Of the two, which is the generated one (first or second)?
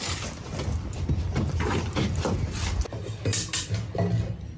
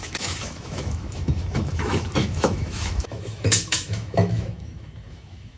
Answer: second